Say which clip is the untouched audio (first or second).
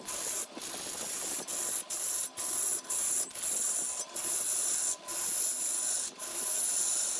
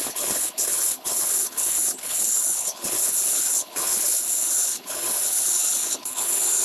first